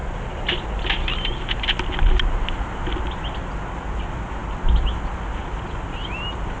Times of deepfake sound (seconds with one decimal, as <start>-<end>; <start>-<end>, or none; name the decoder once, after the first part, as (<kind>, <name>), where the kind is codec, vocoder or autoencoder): none